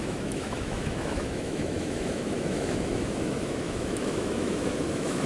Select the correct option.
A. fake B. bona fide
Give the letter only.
A